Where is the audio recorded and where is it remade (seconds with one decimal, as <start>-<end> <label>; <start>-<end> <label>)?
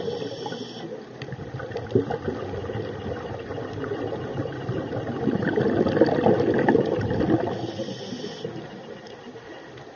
0.0-3.5 recorded; 3.5-7.4 remade; 7.4-10.0 recorded